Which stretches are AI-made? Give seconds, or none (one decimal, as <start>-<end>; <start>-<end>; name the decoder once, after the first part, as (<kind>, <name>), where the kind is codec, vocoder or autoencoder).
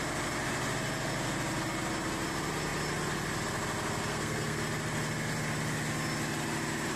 4.1-4.6 (codec, SNAC)